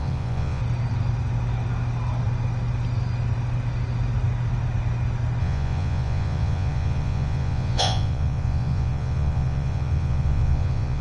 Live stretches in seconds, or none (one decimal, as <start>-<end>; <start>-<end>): 0.6-5.4